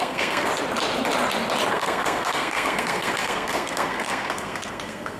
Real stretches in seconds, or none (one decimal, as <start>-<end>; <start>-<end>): 0.5-1.7